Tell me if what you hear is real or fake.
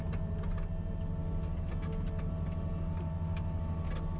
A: real